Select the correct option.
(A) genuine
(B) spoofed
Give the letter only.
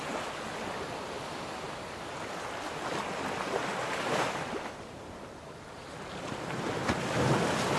A